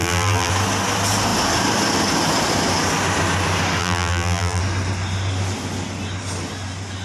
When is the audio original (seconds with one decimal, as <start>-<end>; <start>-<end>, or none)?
0.5-3.8; 4.6-7.0